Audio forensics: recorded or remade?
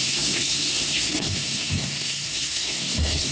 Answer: remade